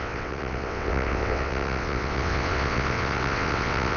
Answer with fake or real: fake